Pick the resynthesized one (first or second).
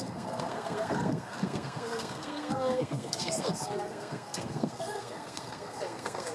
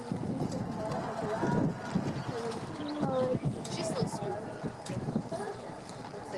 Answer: first